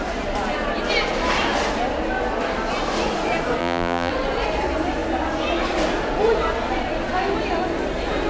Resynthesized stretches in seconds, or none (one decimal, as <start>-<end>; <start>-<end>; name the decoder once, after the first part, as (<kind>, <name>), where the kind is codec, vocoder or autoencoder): 3.6-4.1 (vocoder, BigVGAN v2)

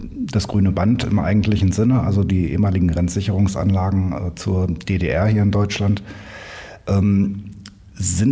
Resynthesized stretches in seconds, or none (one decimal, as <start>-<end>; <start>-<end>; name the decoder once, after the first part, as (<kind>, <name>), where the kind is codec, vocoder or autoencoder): none

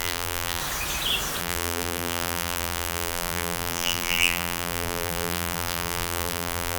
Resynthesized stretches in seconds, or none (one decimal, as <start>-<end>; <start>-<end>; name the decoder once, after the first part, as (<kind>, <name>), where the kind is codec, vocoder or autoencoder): 0.0-0.6 (vocoder, BigVGAN v2); 1.4-6.8

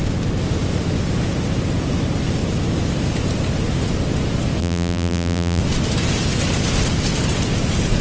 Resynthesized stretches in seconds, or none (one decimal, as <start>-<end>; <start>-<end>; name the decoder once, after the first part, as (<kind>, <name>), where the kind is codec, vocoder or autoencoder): 4.6-5.6 (vocoder, BigVGAN v2)

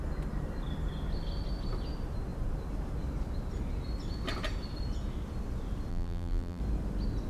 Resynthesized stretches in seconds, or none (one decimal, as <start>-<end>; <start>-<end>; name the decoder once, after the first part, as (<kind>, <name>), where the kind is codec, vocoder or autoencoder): 5.9-6.6 (vocoder, BigVGAN v2)

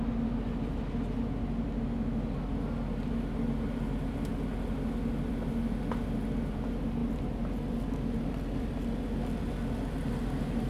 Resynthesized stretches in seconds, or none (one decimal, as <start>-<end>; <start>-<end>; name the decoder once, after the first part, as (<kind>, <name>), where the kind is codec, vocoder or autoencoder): none

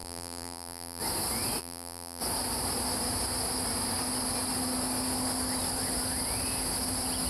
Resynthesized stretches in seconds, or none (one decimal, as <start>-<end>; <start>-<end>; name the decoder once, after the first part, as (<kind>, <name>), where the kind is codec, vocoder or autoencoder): 0.0-1.0 (vocoder, BigVGAN v2); 1.6-2.2

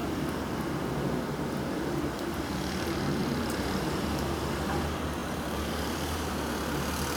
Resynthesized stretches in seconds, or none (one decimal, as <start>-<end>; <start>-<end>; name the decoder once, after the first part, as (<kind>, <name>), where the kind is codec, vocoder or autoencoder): 0.0-0.7 (vocoder, BigVGAN v2); 3.2-4.4; 5.2-6.3